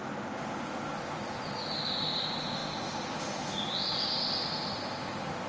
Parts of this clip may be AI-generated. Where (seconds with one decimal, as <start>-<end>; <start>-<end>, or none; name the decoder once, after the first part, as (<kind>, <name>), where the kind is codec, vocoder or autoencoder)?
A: none